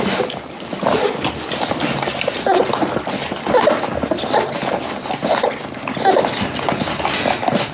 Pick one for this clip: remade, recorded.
recorded